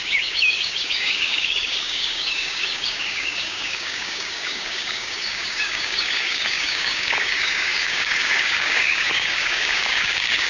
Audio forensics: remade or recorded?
remade